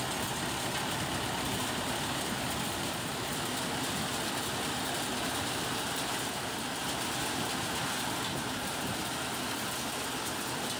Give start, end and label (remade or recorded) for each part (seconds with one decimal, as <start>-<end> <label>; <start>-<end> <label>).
0.0-10.8 recorded